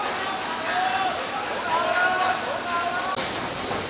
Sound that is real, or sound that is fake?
real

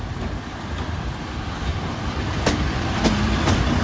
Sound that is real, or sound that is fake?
real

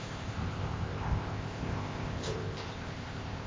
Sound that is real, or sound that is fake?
fake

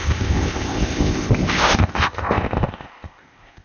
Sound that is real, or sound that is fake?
fake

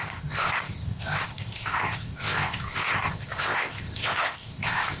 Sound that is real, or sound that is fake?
fake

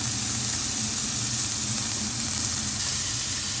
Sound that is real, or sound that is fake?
real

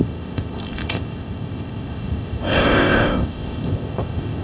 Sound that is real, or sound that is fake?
fake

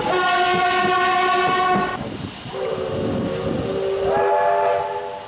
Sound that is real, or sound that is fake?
real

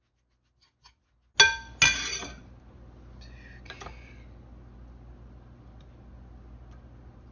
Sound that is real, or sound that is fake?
real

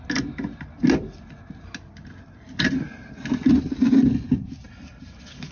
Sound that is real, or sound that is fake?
real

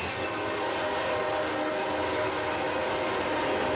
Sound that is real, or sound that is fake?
real